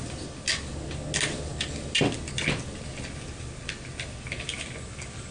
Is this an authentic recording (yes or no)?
yes